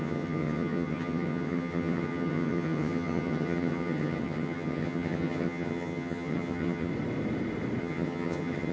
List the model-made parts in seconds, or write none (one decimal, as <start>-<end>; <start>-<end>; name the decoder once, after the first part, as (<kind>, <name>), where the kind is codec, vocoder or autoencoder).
0.0-6.9 (vocoder, HiFi-GAN); 7.8-8.7